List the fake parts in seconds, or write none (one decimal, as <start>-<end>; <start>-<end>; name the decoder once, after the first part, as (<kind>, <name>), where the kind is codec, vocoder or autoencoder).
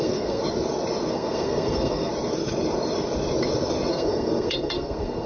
0.0-0.4 (codec, SNAC); 1.1-2.1; 3.9-5.3